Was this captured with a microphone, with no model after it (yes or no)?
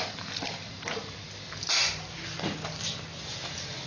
yes